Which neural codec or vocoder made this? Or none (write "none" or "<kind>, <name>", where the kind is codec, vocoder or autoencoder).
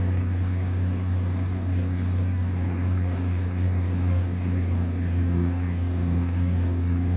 codec, DAC